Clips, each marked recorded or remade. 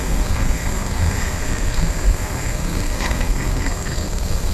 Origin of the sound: remade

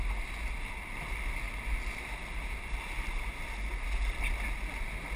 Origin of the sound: recorded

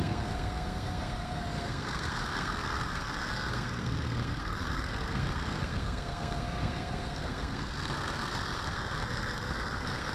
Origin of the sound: remade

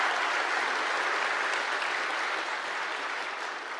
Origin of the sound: recorded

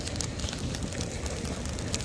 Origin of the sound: recorded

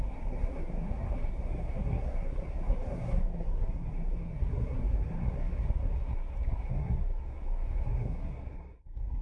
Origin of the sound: remade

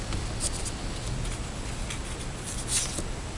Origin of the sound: recorded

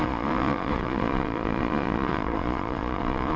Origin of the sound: remade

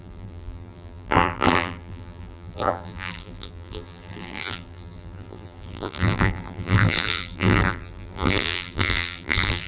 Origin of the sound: remade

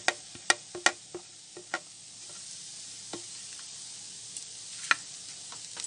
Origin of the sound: recorded